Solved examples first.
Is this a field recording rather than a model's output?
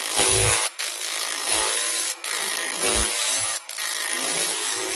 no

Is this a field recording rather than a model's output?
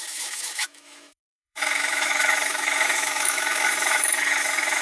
no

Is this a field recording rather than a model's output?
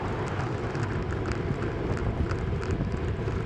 yes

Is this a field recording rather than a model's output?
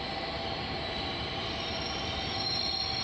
yes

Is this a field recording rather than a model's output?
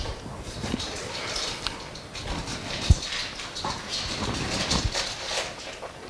yes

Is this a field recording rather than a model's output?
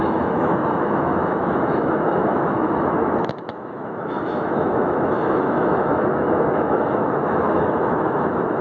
no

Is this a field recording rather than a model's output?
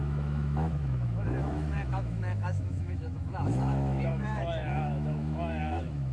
no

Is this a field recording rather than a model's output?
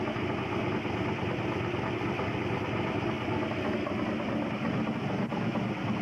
yes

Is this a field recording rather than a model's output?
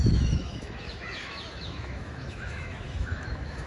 no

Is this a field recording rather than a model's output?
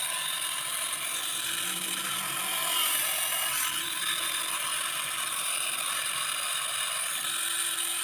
yes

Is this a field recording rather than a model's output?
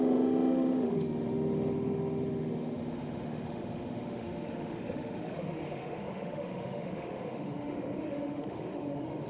no